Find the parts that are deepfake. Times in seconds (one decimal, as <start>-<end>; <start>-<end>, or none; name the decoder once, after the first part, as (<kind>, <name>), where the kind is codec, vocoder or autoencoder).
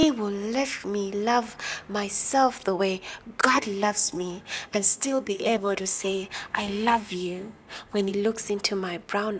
3.4-8.1 (codec, SNAC)